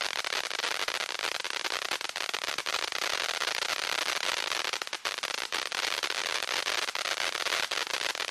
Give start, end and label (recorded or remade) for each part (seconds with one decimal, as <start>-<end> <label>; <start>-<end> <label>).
0.0-8.3 recorded